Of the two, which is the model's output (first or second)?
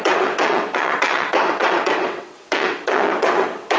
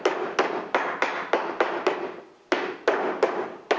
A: first